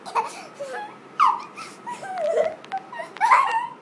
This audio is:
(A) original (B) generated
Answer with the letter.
A